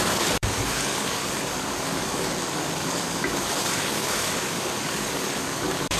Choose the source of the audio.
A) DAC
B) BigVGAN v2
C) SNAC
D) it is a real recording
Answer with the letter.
A